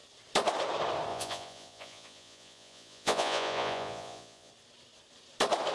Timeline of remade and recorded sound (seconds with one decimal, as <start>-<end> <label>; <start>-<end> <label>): 0.0-1.1 recorded; 1.1-4.5 remade; 4.5-5.7 recorded